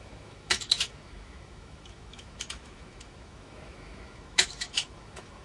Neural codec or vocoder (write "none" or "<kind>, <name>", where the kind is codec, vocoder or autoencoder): autoencoder, DAC-VAE